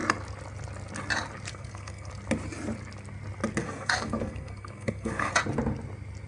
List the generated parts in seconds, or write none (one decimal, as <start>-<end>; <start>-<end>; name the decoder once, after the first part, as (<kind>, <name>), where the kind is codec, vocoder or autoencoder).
1.5-2.1 (codec, SNAC); 3.6-5.3